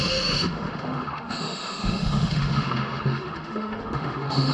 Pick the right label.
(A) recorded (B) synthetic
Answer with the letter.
B